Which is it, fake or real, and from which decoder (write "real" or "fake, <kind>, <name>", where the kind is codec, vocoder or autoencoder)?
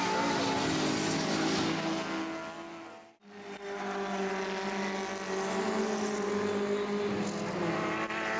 real